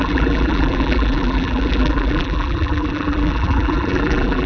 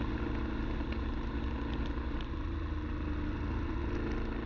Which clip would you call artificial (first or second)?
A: first